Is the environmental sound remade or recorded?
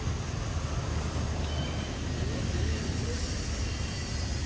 recorded